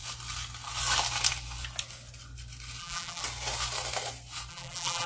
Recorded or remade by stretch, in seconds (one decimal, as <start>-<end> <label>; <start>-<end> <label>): 0.0-2.8 recorded; 2.8-3.2 remade; 3.2-4.5 recorded; 4.5-5.1 remade

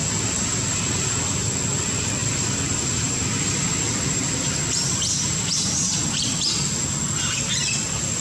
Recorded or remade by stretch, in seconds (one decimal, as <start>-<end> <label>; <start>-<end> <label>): 0.0-2.2 recorded; 2.2-6.4 remade; 6.4-8.2 recorded

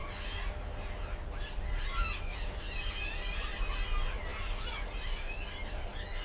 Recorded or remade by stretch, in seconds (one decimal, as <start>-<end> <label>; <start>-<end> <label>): 0.0-6.2 recorded

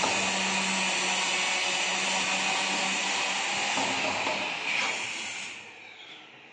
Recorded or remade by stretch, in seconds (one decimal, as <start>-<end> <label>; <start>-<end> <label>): 0.0-6.5 recorded

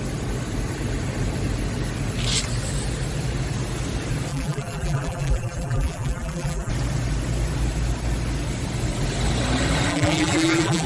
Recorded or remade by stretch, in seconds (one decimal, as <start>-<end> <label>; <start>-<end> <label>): 0.0-4.3 recorded; 4.3-6.7 remade; 6.7-9.9 recorded; 9.9-10.9 remade

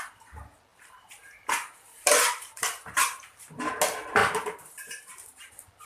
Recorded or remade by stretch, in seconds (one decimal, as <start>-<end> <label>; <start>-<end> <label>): 0.0-0.7 recorded; 0.7-3.7 remade; 3.7-4.2 recorded; 4.2-5.5 remade; 5.5-5.9 recorded

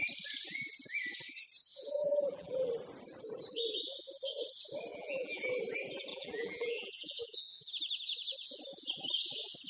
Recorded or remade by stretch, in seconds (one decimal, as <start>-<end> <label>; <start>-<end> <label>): 0.0-1.7 recorded; 1.7-2.7 remade; 2.7-4.9 recorded; 4.9-5.4 remade; 5.4-6.1 recorded; 6.1-7.7 remade; 7.7-9.7 recorded

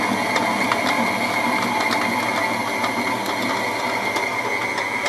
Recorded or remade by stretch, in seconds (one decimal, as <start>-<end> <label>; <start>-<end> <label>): 0.0-0.5 recorded; 0.5-2.1 remade; 2.1-5.1 recorded